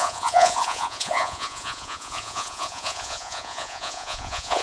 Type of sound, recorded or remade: remade